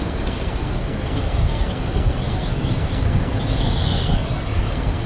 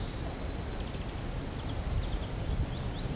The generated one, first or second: first